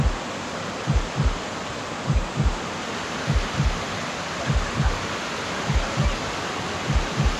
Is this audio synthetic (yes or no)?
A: no